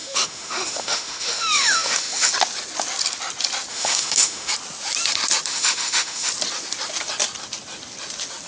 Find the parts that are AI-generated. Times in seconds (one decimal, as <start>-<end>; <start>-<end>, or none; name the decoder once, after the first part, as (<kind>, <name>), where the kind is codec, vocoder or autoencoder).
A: 0.0-2.3 (autoencoder, DAC-VAE); 3.7-4.5; 5.5-6.3